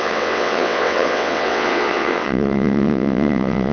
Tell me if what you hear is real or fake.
fake